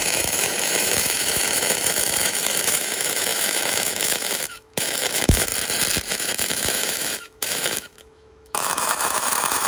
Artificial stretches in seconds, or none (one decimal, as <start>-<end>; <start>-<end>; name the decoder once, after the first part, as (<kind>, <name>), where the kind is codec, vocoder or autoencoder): 0.0-5.5 (autoencoder, DAC-VAE); 6.1-9.7